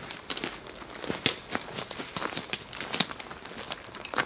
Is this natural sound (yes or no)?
yes